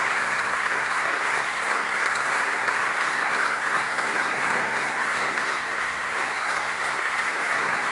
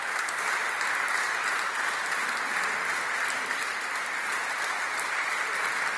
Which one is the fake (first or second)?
first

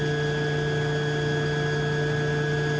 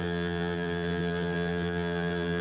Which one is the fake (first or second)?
second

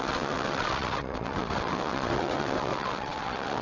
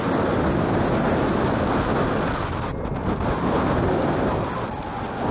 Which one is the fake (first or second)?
first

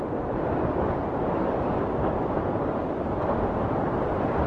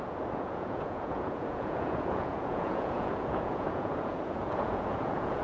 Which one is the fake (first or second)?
second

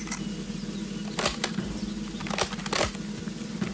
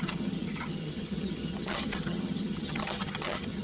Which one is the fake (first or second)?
second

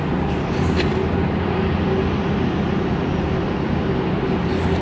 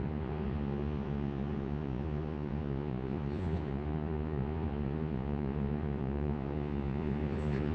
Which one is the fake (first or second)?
second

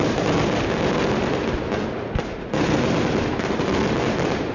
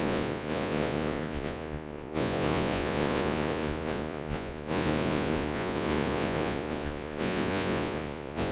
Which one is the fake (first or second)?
second